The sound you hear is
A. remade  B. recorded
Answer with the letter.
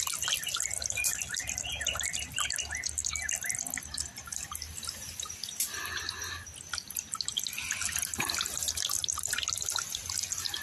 B